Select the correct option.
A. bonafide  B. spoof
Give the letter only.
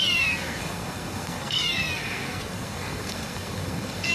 B